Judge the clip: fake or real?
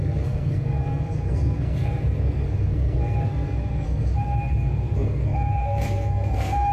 fake